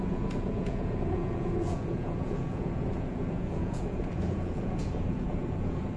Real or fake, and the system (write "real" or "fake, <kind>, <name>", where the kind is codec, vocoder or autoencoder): fake, vocoder, Vocos